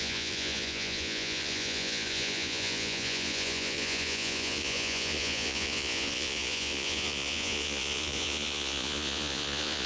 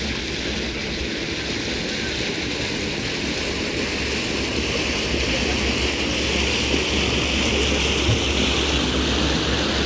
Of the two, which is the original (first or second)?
second